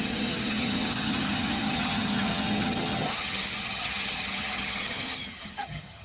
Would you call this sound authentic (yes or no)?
no